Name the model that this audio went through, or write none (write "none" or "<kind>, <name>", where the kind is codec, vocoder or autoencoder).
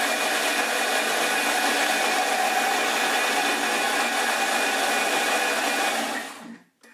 none